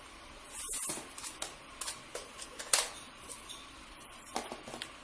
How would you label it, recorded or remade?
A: recorded